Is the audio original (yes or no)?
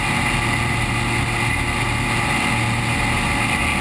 yes